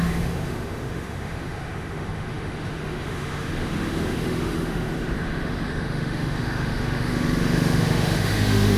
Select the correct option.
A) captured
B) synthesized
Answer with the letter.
B